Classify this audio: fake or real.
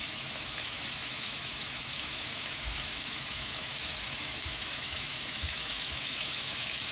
fake